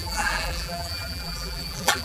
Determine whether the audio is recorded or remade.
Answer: remade